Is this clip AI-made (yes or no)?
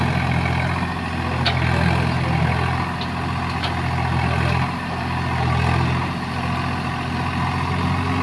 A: no